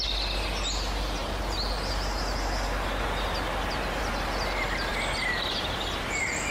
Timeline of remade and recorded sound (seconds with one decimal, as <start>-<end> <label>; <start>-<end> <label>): 0.0-6.5 recorded